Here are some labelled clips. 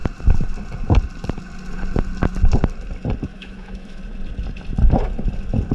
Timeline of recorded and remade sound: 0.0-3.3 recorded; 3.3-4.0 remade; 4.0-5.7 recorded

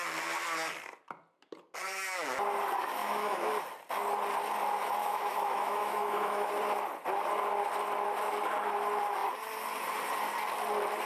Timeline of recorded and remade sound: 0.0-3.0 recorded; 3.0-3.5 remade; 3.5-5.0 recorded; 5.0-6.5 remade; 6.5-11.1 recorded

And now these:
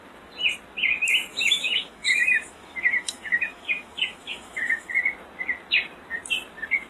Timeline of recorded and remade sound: 0.0-1.3 recorded; 1.3-4.9 remade; 4.9-6.9 recorded

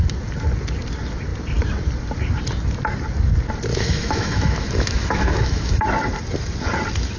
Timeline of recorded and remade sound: 0.0-3.7 recorded; 3.7-5.8 remade; 5.8-7.2 recorded

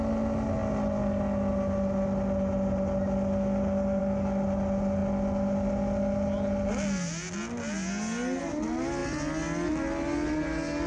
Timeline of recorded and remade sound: 0.0-10.9 recorded

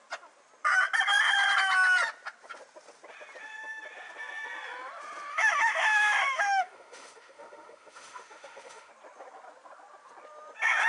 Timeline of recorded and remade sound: 0.0-5.3 recorded; 5.3-8.9 remade; 8.9-10.9 recorded

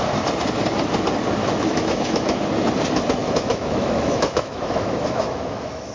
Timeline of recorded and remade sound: 0.0-1.4 recorded; 1.4-2.4 remade; 2.4-3.2 recorded; 3.2-5.9 remade